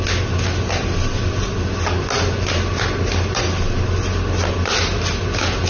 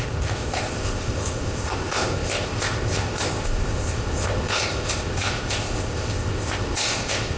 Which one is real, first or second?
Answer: first